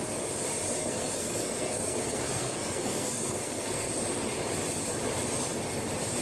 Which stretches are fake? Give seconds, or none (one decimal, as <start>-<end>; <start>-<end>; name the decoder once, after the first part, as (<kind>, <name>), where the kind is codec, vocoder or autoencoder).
0.8-3.9 (codec, SNAC)